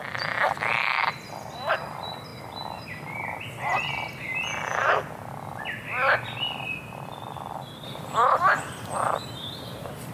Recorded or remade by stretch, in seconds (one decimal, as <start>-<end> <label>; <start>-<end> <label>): 0.0-1.0 remade; 1.0-1.8 recorded; 1.8-2.3 remade; 2.3-6.2 recorded; 6.2-10.1 remade